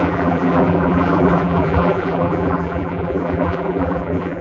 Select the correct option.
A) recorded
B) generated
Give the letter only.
B